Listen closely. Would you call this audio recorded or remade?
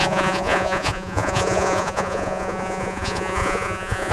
remade